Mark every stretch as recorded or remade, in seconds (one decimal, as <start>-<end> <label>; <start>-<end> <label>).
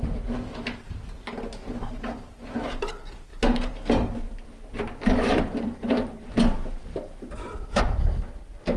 0.0-1.6 recorded; 1.6-2.9 remade; 2.9-3.3 recorded; 3.3-7.8 remade; 7.8-8.8 recorded